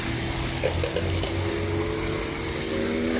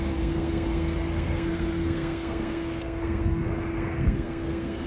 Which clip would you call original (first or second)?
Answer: first